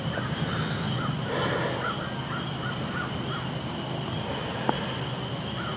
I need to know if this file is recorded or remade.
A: recorded